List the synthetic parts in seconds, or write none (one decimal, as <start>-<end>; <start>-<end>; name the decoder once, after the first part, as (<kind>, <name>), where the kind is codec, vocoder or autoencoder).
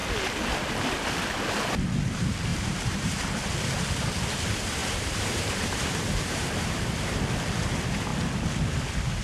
2.5-3.1 (vocoder, BigVGAN v2); 4.8-6.6